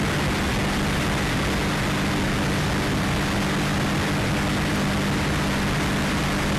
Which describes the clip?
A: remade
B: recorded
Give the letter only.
B